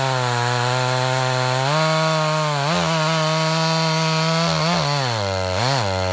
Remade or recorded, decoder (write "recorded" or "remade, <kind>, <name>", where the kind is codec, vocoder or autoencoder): recorded